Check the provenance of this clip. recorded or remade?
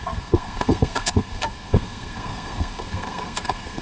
remade